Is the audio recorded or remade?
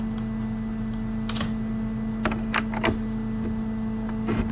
recorded